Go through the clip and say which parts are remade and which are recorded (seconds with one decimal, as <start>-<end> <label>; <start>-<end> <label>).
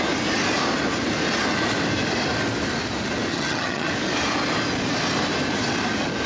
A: 0.0-3.3 recorded; 3.3-3.9 remade; 3.9-6.3 recorded